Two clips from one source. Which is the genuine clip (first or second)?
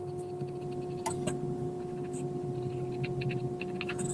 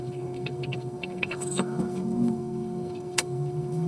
first